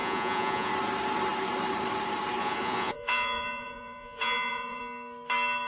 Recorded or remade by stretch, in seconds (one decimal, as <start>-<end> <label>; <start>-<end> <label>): 0.0-0.7 remade; 0.7-2.4 recorded; 2.4-4.8 remade; 4.8-5.7 recorded